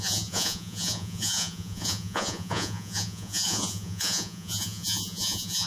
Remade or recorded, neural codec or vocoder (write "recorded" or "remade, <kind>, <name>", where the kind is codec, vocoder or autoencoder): remade, vocoder, Vocos